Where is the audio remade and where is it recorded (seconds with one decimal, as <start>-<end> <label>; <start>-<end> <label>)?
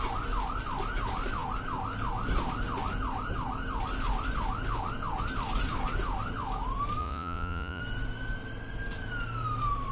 0.0-7.0 recorded; 7.0-7.8 remade; 7.8-9.9 recorded